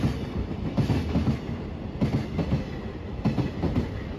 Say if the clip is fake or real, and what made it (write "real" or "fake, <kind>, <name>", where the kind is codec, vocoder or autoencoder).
real